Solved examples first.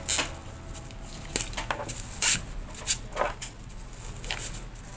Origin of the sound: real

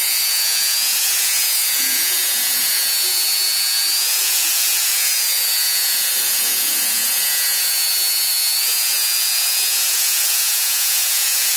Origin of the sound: fake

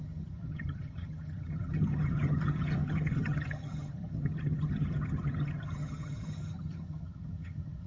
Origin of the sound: fake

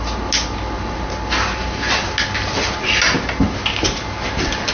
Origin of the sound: real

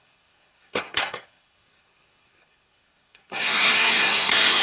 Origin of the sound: fake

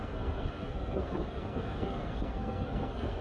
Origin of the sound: fake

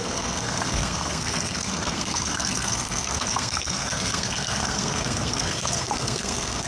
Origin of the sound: fake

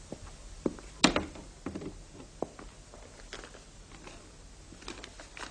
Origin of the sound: real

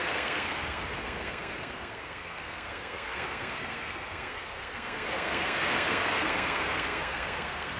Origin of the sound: fake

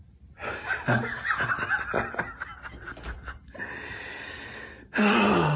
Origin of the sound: real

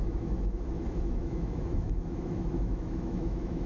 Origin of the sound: fake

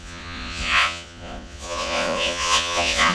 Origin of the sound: fake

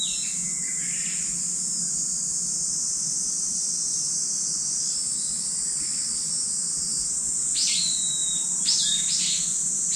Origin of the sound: real